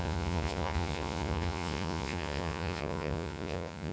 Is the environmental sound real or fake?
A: fake